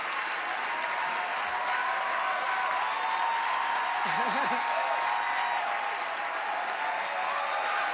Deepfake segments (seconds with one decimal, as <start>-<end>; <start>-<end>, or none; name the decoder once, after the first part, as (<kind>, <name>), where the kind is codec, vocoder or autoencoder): none